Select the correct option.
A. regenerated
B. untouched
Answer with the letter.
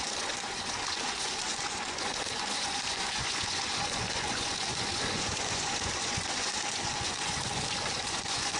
A